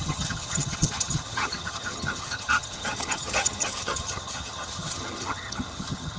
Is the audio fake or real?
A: fake